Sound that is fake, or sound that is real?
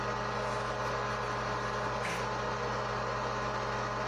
real